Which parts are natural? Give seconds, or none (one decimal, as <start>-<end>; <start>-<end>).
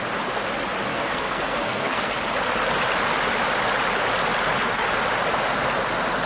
0.0-0.9; 2.1-6.3